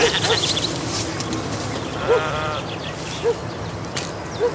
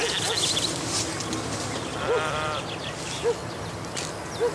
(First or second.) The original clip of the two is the second